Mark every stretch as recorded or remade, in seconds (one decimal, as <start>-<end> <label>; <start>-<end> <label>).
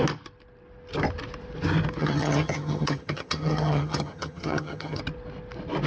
0.0-2.0 recorded; 2.0-5.0 remade; 5.0-5.9 recorded